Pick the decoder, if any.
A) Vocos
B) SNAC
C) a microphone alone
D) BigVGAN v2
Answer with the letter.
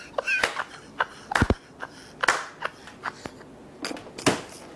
C